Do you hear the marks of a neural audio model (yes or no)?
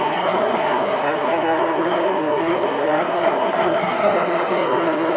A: yes